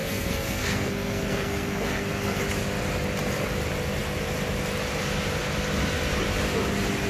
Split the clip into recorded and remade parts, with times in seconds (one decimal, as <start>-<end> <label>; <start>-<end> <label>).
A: 0.0-2.4 remade; 2.4-7.1 recorded